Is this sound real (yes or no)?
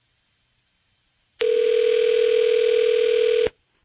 yes